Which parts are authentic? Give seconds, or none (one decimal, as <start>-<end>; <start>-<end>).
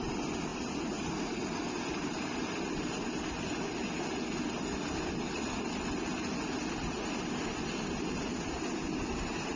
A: 0.0-9.6